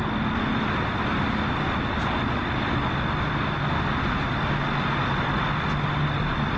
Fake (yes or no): no